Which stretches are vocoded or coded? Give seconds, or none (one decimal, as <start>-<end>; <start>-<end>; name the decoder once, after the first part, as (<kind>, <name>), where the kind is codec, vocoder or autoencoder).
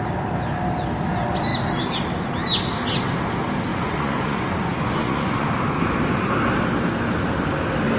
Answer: 3.7-5.5 (vocoder, Vocos)